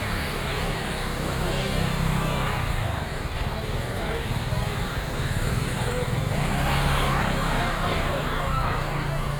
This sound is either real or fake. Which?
fake